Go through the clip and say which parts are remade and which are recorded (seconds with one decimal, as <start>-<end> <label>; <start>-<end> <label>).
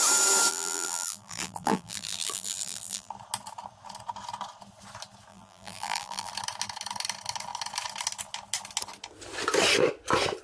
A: 0.0-0.5 recorded; 0.5-3.1 remade; 3.1-5.3 recorded; 5.3-6.3 remade; 6.3-10.4 recorded